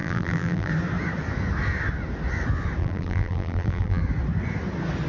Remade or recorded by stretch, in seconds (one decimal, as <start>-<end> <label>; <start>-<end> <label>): 0.0-0.7 remade; 0.7-2.8 recorded; 2.8-4.0 remade; 4.0-5.1 recorded